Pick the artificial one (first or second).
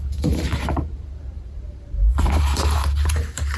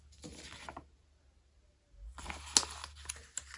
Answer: first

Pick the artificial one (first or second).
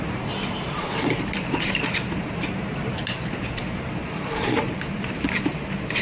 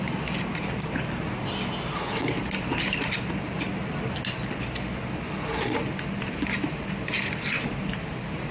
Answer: first